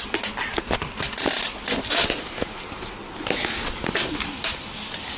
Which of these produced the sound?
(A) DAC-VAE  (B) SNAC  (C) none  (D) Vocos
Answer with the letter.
C